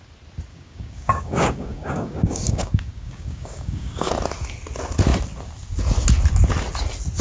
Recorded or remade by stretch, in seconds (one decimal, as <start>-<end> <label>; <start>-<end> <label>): 0.0-0.5 recorded; 0.5-4.1 remade; 4.1-7.2 recorded